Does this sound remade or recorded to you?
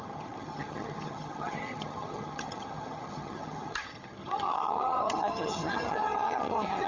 remade